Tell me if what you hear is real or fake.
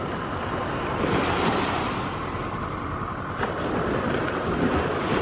real